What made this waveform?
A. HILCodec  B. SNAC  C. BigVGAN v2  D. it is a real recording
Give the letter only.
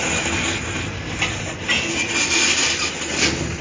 D